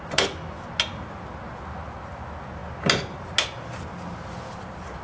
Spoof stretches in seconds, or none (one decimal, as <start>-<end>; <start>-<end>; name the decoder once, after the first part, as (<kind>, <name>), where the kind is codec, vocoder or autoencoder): none